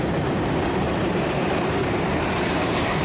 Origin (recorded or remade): remade